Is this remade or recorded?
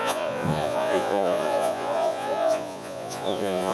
remade